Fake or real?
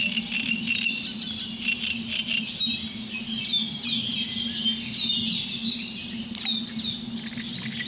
real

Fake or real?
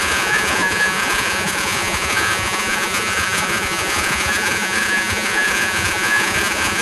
fake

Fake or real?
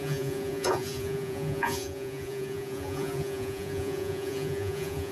fake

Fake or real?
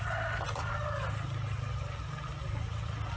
real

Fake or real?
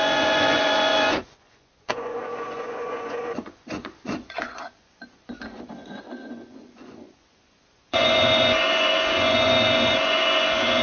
fake